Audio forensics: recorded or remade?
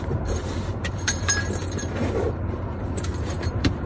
remade